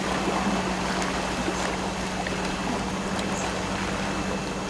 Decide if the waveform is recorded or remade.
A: recorded